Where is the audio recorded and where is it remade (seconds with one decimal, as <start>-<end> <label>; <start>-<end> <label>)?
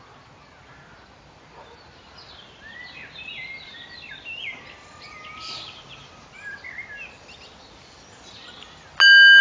0.0-9.4 recorded